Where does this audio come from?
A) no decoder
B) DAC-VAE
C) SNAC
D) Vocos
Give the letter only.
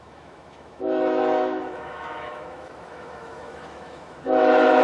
B